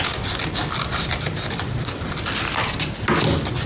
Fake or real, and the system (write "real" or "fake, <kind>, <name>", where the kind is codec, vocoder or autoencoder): real